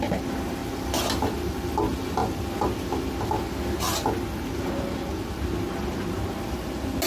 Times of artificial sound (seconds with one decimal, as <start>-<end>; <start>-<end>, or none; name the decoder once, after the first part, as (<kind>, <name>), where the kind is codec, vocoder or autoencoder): none